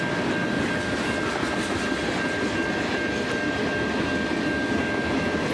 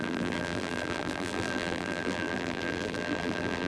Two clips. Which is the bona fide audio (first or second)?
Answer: first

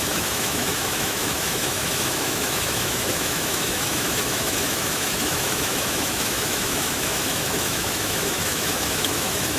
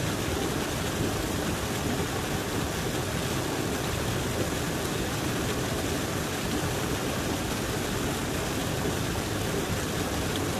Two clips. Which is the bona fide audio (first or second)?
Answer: second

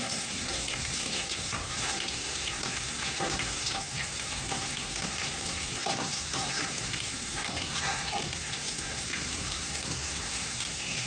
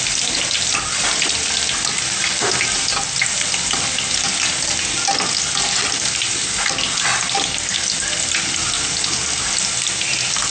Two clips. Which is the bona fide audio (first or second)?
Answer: second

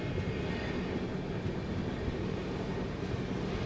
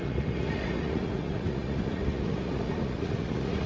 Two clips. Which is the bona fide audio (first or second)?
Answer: first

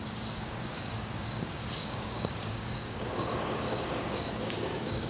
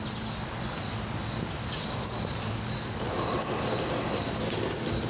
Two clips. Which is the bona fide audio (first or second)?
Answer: second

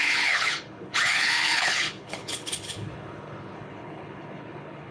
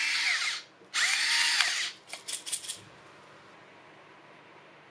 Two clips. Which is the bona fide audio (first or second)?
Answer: second